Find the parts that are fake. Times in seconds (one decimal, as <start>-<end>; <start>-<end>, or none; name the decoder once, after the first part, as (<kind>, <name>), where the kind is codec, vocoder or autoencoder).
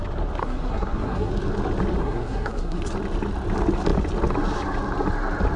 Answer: 0.4-1.3 (codec, SNAC); 2.0-2.8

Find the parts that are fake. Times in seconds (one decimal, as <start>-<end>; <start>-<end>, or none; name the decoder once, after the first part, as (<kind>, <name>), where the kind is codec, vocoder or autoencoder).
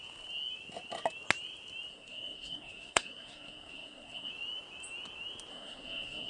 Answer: 1.9-4.3 (codec, SNAC); 5.5-6.3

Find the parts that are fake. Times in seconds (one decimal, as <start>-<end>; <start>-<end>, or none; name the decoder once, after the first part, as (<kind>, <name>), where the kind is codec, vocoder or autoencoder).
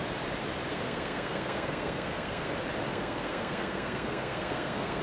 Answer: 0.7-2.5 (codec, SNAC); 2.9-5.0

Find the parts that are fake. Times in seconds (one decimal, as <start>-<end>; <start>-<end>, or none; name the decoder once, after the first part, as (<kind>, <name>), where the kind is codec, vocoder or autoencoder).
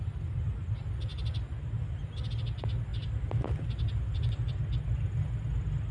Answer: none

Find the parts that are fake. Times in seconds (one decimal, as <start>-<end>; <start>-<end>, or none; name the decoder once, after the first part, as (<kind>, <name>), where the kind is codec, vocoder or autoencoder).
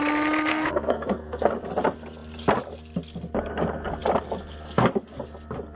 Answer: 0.5-1.5 (codec, SNAC)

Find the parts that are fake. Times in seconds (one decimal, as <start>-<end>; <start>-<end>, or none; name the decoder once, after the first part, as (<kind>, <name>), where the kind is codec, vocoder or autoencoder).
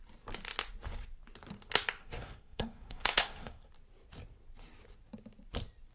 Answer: 2.0-3.7 (codec, SNAC)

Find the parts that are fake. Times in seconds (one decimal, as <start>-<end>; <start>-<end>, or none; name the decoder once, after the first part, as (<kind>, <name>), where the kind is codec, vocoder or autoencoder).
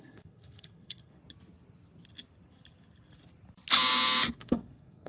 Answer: 0.0-1.2 (codec, SNAC); 4.3-5.1